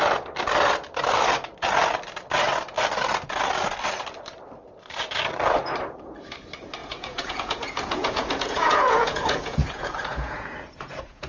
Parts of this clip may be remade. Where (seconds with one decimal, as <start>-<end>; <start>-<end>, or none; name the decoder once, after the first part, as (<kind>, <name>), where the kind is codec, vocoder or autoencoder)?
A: 6.8-11.3 (vocoder, Vocos)